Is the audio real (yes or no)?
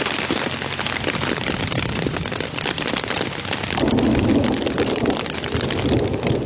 yes